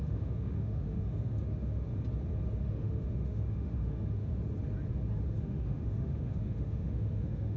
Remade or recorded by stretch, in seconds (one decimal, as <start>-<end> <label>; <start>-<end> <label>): 0.0-1.9 remade; 1.9-2.6 recorded; 2.6-4.3 remade; 4.3-5.4 recorded; 5.4-7.6 remade